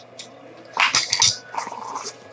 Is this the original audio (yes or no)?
yes